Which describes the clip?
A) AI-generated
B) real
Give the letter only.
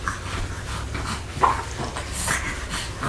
B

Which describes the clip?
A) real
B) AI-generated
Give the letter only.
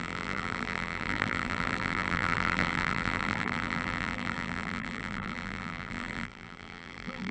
B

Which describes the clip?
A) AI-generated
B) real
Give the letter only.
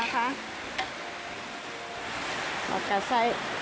B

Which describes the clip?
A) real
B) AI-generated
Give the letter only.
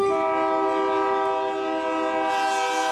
A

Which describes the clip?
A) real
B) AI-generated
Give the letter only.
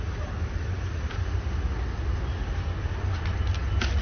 A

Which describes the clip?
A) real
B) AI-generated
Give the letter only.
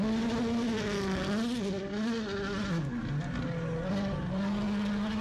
A